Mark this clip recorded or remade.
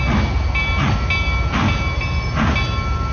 recorded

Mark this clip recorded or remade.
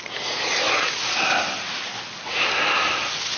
recorded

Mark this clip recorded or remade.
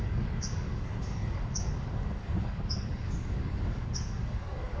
remade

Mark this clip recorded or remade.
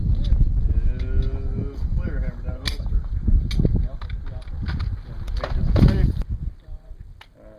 recorded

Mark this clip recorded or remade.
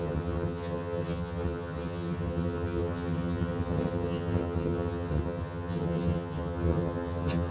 remade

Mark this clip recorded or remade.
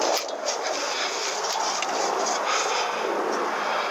recorded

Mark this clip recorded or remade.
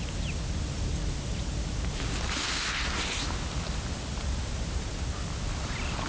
recorded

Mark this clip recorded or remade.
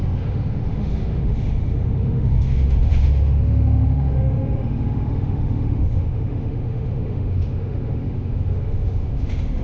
remade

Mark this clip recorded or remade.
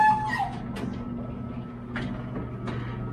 recorded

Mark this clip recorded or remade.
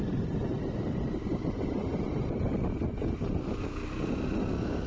recorded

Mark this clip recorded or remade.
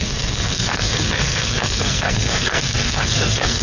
remade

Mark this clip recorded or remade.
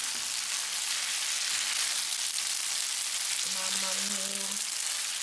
recorded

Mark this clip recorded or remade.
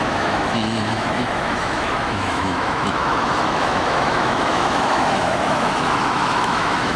remade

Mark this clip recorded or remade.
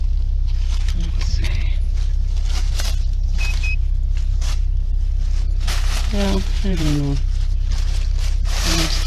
remade